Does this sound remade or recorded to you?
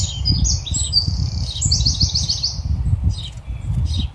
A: recorded